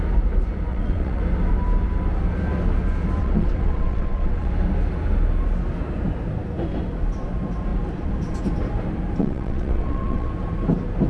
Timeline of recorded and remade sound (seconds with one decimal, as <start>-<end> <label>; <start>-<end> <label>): 0.0-0.7 recorded; 0.7-1.2 remade; 1.2-3.2 recorded; 3.2-4.5 remade; 4.5-9.2 recorded; 9.2-10.3 remade; 10.3-11.1 recorded